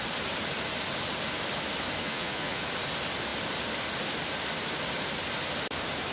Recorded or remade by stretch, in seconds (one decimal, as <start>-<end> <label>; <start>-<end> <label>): 0.0-2.0 recorded; 2.0-2.6 remade; 2.6-6.1 recorded